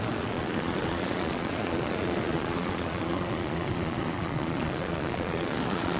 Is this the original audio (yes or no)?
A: no